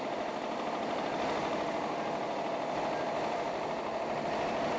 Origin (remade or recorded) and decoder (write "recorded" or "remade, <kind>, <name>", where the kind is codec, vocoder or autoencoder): recorded